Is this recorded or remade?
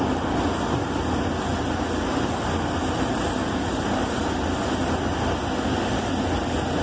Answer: recorded